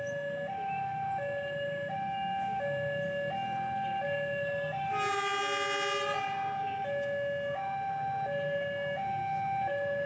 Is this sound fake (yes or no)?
no